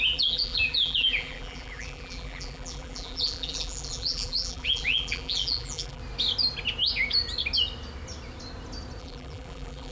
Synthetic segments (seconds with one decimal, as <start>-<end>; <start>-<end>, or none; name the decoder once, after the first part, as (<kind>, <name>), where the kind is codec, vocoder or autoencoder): 0.0-6.0 (vocoder, BigVGAN v2); 9.0-9.9